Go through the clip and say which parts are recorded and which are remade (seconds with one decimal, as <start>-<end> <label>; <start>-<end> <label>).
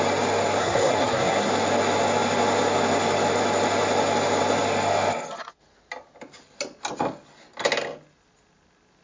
0.0-0.6 recorded; 0.6-1.5 remade; 1.5-9.0 recorded